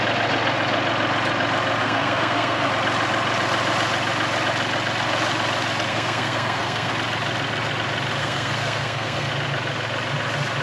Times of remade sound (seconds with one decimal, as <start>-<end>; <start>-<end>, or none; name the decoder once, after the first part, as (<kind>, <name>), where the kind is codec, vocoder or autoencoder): 1.8-2.7 (codec, SNAC); 5.9-6.9; 8.2-9.3